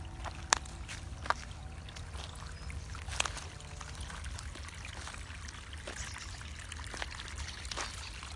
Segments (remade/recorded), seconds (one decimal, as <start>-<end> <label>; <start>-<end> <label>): 0.0-8.4 recorded